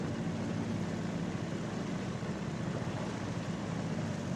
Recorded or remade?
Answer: recorded